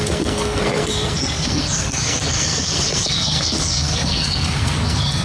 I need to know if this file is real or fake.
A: fake